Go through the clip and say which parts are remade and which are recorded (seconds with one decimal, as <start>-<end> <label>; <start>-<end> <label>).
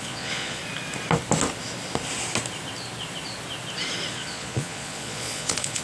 0.0-0.6 remade; 0.6-4.1 recorded; 4.1-5.8 remade